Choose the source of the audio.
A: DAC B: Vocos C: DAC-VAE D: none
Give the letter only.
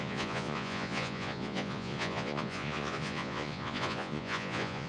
B